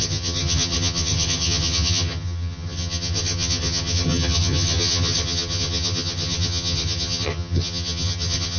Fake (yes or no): yes